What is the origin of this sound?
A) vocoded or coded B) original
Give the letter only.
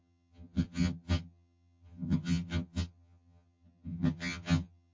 A